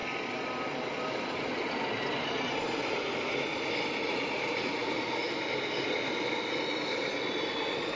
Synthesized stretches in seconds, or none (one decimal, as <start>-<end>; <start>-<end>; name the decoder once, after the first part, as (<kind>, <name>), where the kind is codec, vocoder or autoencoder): 4.0-5.3 (vocoder, Vocos)

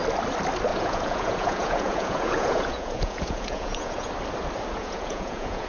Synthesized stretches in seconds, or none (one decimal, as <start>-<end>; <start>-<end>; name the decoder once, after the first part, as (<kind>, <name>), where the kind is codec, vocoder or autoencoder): 0.7-4.1 (vocoder, Vocos); 4.8-5.7

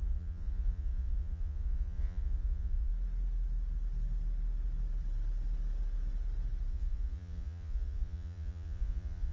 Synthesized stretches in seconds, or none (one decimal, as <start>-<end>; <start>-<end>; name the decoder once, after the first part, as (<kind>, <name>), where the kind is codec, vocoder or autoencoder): 0.0-2.9 (vocoder, Vocos); 6.7-9.3